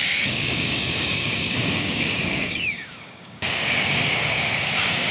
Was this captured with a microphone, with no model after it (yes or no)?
no